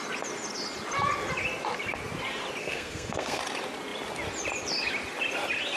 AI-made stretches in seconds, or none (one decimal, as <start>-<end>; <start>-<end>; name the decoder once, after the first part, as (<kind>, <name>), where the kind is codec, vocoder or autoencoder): 2.6-3.4 (codec, SNAC)